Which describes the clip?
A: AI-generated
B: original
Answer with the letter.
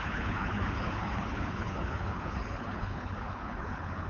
A